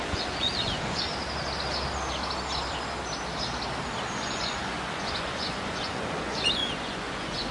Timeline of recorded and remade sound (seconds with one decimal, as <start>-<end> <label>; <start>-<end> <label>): 0.0-1.1 remade; 1.1-4.2 recorded; 4.2-7.5 remade